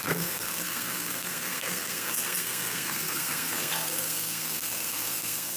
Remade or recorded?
remade